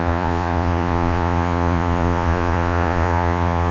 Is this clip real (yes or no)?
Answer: no